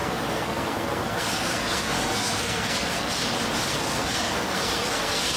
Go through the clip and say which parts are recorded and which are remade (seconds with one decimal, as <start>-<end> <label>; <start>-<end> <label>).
0.0-3.2 remade; 3.2-3.7 recorded; 3.7-5.4 remade

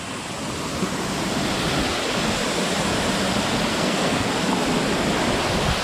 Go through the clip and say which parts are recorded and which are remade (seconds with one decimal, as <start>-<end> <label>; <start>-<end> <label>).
0.0-3.7 recorded; 3.7-4.3 remade; 4.3-5.8 recorded

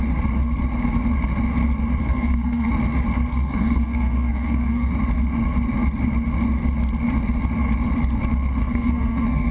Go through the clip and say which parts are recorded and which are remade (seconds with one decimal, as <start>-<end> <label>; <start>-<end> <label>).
0.0-2.0 recorded; 2.0-2.7 remade; 2.7-3.3 recorded; 3.3-4.9 remade; 4.9-8.6 recorded; 8.6-9.5 remade

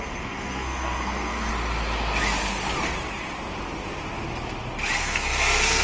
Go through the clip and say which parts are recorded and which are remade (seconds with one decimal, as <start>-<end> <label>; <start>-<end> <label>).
0.0-1.5 remade; 1.5-5.0 recorded; 5.0-5.8 remade

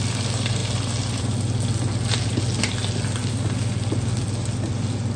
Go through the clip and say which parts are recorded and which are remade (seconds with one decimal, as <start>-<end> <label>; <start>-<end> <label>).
0.0-5.2 recorded